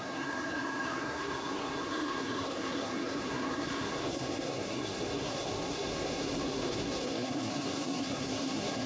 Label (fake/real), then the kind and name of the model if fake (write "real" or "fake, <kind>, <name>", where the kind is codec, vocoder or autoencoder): fake, codec, SNAC